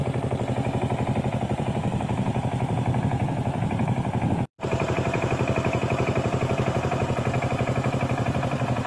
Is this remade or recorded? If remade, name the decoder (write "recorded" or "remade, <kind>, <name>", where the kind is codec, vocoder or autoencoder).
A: remade, vocoder, BigVGAN v2